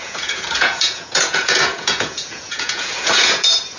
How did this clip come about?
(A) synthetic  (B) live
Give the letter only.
A